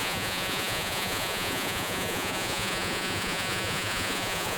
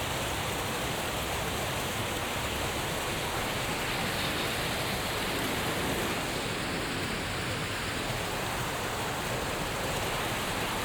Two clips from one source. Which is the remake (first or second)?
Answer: first